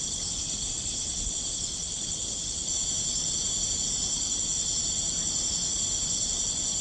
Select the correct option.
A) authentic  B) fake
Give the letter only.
A